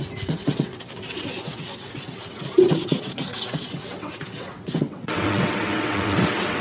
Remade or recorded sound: remade